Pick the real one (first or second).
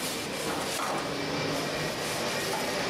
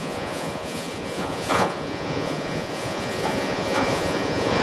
first